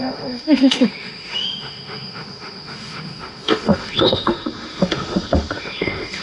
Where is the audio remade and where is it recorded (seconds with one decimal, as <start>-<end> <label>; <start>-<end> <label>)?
0.0-6.2 remade